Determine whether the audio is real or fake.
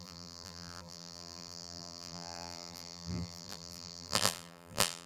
fake